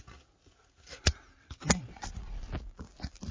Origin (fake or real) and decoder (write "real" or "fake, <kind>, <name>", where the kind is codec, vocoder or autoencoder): real